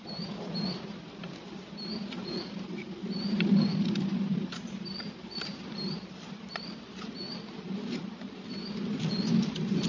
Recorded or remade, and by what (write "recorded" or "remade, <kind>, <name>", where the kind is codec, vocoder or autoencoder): recorded